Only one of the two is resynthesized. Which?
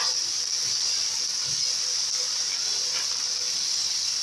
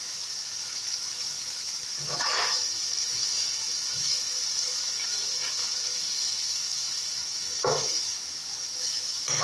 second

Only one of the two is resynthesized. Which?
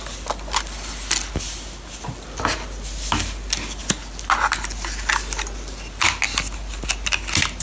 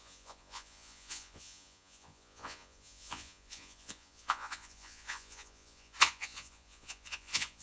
second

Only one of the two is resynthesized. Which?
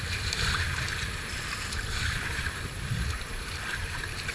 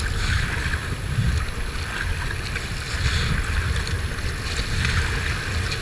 first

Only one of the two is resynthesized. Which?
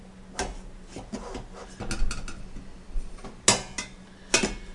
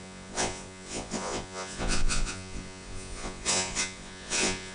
second